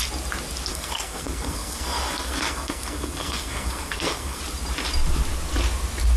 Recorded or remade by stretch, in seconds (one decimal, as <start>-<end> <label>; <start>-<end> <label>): 0.0-0.7 recorded; 0.7-4.4 remade; 4.4-6.2 recorded